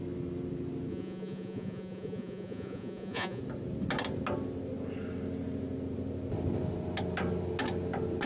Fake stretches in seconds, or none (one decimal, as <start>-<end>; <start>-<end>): 0.9-3.4